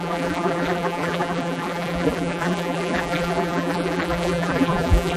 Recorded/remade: remade